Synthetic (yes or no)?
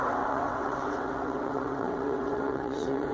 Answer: yes